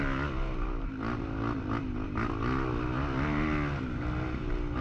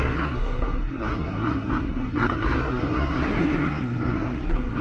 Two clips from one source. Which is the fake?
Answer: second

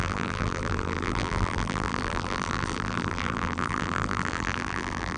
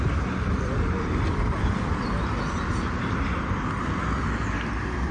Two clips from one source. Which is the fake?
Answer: first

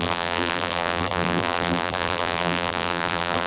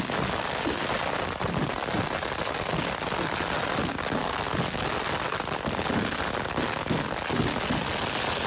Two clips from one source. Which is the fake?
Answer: first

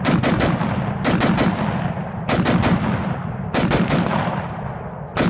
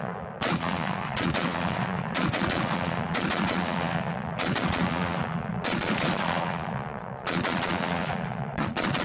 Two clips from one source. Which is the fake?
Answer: second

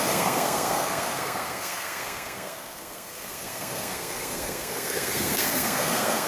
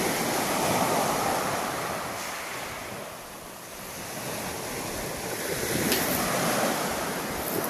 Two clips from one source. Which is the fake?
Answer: first